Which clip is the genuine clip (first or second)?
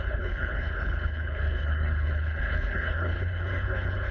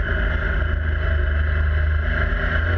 second